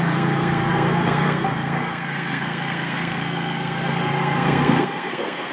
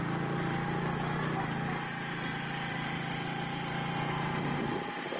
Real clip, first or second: second